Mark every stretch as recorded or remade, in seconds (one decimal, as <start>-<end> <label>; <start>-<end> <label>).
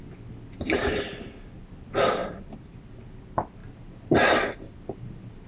0.0-0.8 remade; 0.8-2.2 recorded; 2.2-2.9 remade; 2.9-3.6 recorded; 3.6-5.5 remade